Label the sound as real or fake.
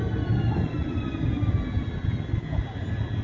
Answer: real